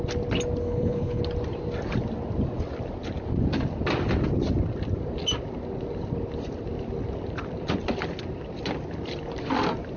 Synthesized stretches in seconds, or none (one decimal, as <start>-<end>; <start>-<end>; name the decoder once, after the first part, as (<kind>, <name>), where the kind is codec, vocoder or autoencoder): 0.6-1.2 (codec, HILCodec)